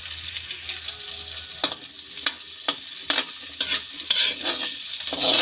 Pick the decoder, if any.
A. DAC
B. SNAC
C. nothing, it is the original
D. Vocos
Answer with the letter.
C